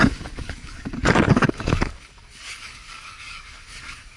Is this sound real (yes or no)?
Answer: no